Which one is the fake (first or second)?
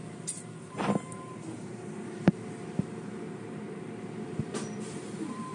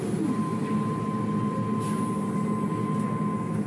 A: first